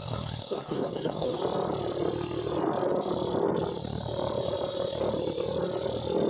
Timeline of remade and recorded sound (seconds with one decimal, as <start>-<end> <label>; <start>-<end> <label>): 0.0-1.4 remade; 1.4-6.3 recorded